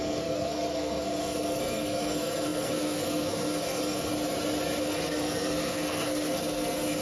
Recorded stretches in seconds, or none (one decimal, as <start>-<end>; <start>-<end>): 4.1-4.8